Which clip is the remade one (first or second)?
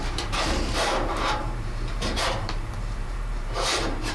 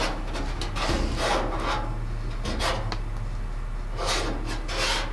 first